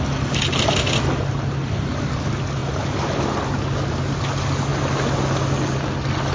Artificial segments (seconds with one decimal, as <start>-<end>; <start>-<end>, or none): none